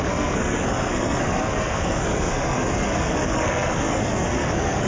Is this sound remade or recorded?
remade